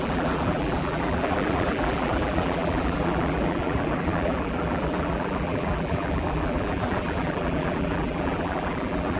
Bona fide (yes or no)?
no